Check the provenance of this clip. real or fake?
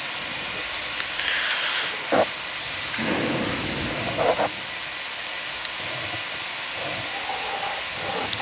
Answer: real